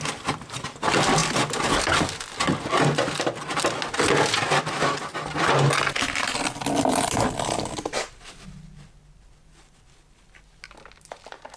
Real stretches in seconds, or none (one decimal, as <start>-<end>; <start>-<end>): 0.0-11.6